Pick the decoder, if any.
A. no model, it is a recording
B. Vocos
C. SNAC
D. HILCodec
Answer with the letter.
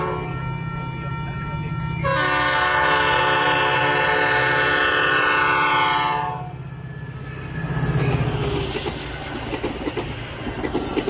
A